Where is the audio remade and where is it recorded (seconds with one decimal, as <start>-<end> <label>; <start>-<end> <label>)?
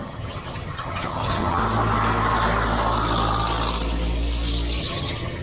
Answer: 0.0-1.6 remade; 1.6-4.8 recorded; 4.8-5.4 remade